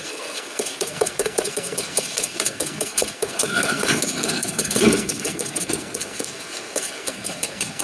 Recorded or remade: remade